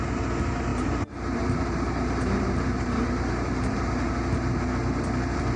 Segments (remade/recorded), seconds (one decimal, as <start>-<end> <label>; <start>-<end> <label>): 0.0-0.7 recorded; 0.7-4.1 remade; 4.1-5.6 recorded